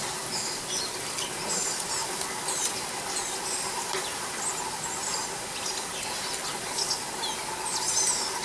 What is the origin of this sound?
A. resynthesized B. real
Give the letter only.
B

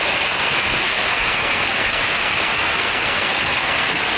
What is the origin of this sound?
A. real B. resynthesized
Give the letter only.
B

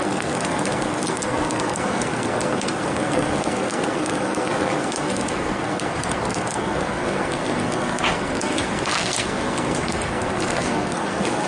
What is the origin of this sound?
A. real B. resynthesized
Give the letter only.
B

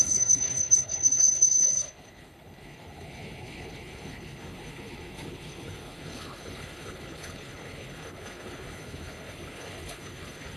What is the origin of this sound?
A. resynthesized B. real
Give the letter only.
A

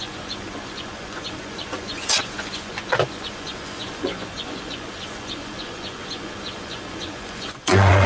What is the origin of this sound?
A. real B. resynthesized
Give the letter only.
B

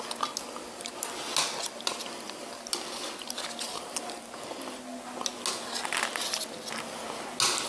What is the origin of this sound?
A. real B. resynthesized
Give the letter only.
A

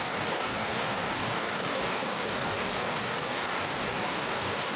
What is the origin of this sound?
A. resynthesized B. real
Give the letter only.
A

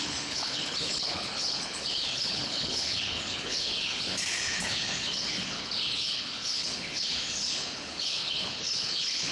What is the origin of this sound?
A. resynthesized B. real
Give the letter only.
A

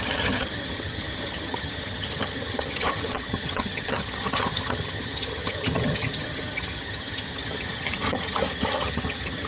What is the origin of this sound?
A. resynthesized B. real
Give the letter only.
A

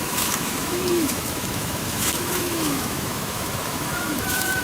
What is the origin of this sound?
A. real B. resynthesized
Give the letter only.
B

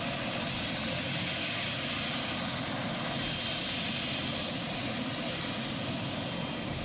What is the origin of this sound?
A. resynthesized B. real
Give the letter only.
B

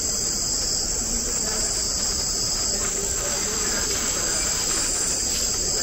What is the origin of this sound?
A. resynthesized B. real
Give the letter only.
A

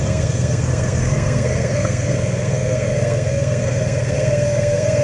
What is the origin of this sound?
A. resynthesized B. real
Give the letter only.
A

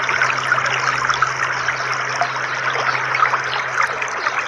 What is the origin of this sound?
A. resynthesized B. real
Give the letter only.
B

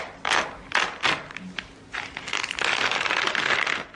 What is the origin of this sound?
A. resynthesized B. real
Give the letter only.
B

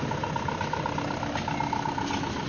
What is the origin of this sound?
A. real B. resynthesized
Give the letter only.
A